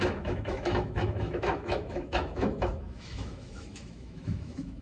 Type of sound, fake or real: fake